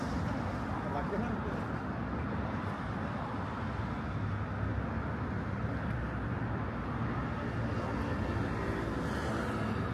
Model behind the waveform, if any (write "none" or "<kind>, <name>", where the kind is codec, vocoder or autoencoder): none